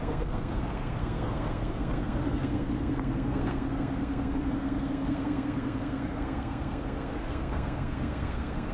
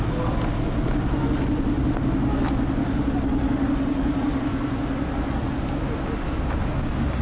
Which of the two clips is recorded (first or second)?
second